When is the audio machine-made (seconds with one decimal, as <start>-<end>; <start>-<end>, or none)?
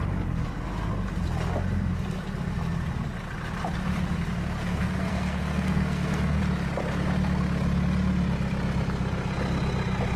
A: 4.4-6.4